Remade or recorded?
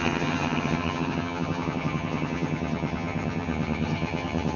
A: remade